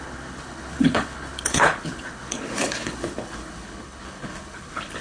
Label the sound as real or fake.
fake